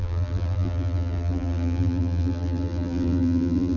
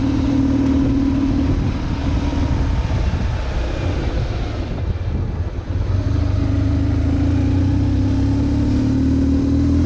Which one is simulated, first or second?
first